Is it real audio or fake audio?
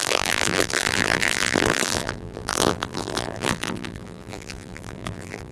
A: fake